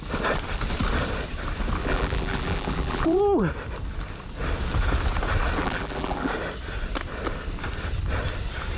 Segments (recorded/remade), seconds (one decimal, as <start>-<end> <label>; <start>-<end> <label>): 0.0-1.8 recorded; 1.8-3.2 remade; 3.2-5.6 recorded; 5.6-6.3 remade; 6.3-8.8 recorded

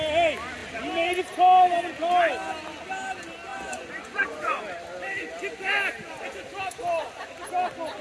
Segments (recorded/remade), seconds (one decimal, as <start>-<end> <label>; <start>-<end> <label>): 0.0-3.5 recorded; 3.5-4.6 remade; 4.6-8.0 recorded

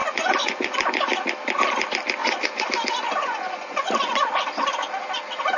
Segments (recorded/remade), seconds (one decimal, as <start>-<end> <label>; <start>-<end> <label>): 0.0-0.7 remade; 0.7-2.2 recorded; 2.2-2.7 remade; 2.7-3.2 recorded; 3.2-3.9 remade; 3.9-5.6 recorded

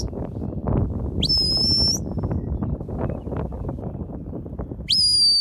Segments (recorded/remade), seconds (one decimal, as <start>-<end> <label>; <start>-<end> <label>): 0.0-5.4 recorded

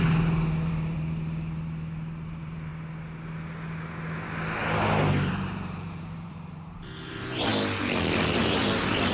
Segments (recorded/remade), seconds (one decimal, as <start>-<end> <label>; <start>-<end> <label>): 0.0-2.7 remade; 2.7-5.3 recorded; 5.3-7.5 remade; 7.5-8.4 recorded; 8.4-9.1 remade

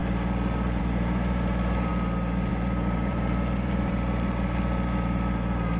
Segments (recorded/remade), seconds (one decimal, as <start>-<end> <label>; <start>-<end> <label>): 0.0-1.9 remade; 1.9-2.5 recorded; 2.5-5.8 remade